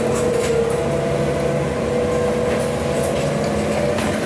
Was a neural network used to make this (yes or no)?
no